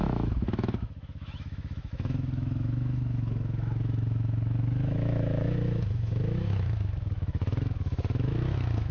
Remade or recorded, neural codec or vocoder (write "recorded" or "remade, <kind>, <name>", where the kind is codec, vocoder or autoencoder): remade, autoencoder, DAC-VAE